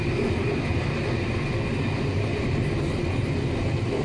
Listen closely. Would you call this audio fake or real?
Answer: real